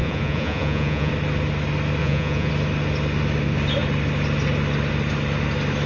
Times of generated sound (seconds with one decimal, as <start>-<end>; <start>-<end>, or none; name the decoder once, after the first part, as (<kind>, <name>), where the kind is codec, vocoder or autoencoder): 0.0-1.1 (vocoder, Vocos); 2.0-2.5